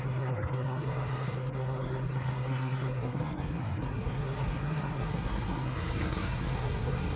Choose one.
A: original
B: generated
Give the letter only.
B